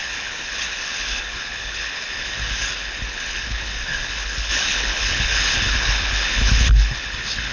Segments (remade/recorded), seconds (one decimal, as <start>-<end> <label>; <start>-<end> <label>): 0.0-7.5 remade